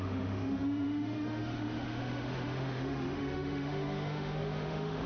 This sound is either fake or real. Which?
fake